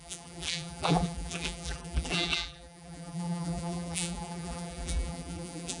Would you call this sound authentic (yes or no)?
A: no